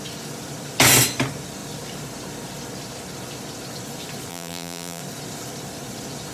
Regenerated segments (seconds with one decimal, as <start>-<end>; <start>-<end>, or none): 4.3-5.0